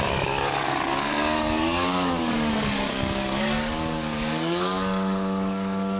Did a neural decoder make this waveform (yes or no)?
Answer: yes